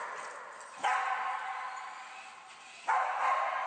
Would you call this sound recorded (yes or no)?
yes